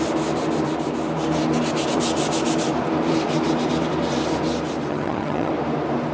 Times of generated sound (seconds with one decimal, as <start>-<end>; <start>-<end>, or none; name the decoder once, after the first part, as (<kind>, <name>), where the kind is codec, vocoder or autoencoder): 4.9-5.5 (vocoder, HiFi-GAN)